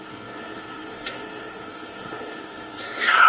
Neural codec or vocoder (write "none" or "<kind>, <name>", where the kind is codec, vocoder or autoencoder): codec, SNAC